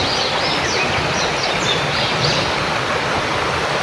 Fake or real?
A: real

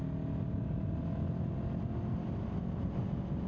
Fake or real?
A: real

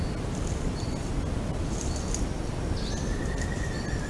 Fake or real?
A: real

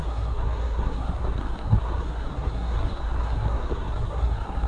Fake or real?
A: fake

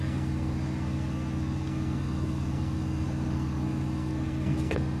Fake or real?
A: fake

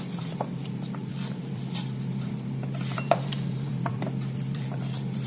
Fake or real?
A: fake